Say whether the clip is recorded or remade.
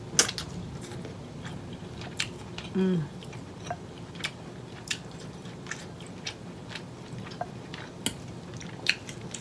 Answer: recorded